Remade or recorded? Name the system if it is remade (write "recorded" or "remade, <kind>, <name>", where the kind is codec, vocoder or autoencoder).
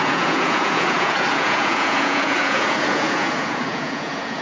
remade, vocoder, Vocos